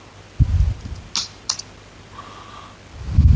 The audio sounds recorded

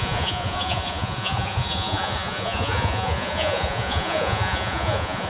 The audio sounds remade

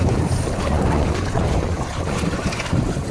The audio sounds remade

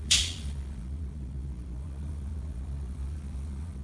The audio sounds remade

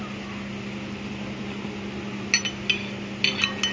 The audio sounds recorded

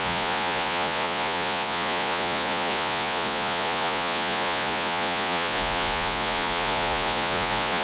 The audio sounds remade